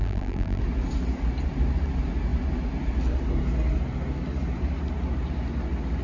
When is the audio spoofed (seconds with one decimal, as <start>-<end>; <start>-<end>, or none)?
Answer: 0.0-0.6